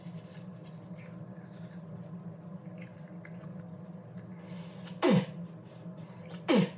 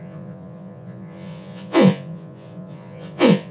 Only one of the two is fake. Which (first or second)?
second